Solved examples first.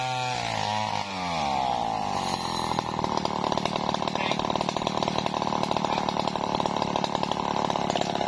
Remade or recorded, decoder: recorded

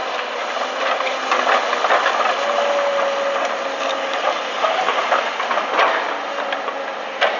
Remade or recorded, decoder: recorded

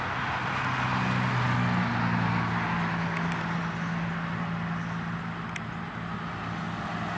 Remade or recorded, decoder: recorded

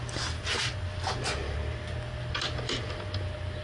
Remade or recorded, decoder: recorded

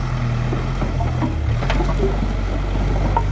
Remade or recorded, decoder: recorded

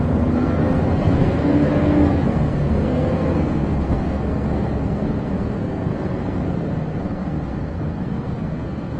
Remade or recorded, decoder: remade, codec, SNAC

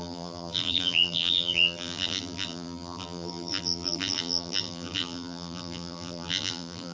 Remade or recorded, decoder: remade, vocoder, BigVGAN v2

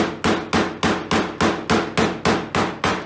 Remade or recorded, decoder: recorded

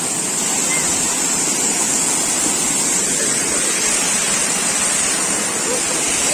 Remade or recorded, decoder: recorded